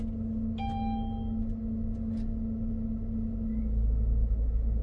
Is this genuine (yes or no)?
yes